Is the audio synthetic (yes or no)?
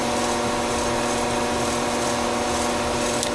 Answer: no